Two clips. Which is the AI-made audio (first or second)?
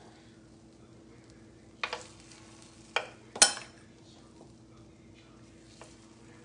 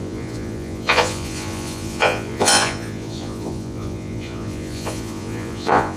second